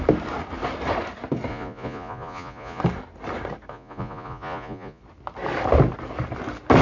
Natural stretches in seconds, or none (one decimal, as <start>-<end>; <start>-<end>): 0.0-1.5; 2.8-3.7; 5.0-6.8